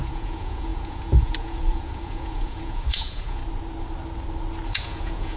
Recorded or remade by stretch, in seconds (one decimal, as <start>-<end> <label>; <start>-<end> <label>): 0.0-3.4 remade; 3.4-4.7 recorded; 4.7-5.4 remade